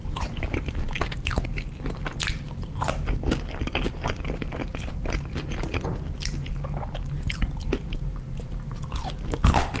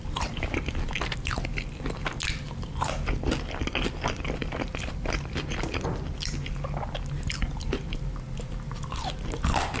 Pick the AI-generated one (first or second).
first